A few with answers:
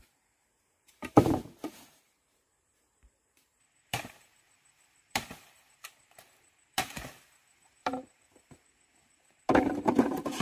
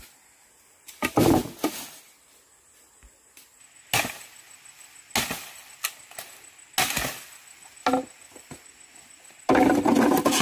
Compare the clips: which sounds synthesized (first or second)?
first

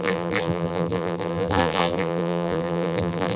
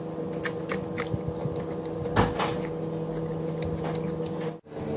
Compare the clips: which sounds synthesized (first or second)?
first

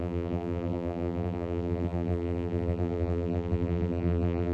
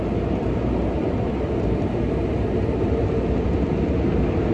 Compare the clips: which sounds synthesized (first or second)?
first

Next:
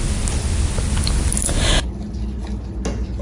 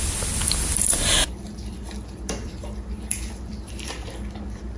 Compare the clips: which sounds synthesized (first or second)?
second